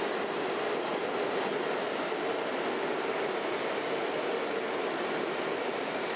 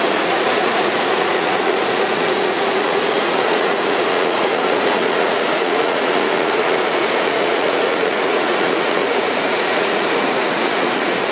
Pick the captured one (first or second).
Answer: first